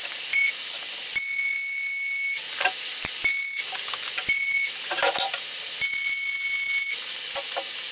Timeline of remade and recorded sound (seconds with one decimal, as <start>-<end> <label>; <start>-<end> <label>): 0.0-7.9 recorded